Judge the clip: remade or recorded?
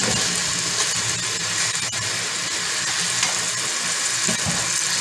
recorded